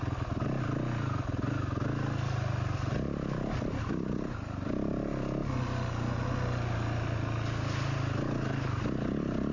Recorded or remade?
recorded